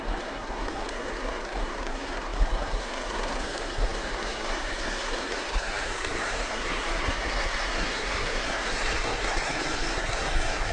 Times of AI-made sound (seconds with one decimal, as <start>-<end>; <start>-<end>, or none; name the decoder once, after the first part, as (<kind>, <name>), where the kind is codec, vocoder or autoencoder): 0.0-10.7 (codec, SNAC)